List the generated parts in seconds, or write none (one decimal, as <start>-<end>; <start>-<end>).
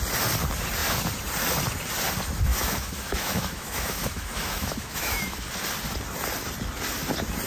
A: 2.5-5.5